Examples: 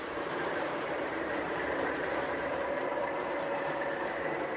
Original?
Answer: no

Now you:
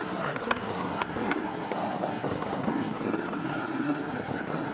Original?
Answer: no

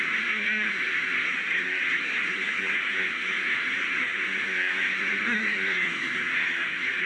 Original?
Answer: no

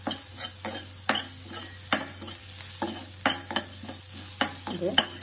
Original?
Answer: yes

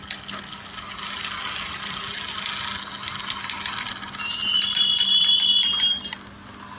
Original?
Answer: yes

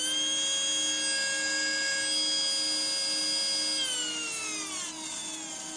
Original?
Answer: yes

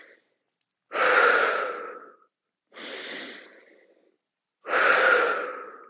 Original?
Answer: yes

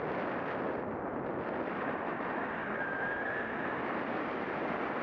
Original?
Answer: yes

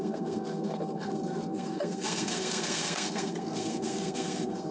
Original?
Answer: no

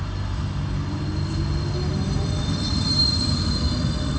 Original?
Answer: yes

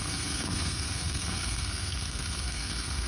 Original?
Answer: no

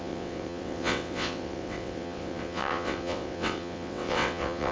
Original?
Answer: no